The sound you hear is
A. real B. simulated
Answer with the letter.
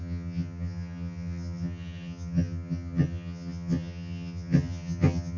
B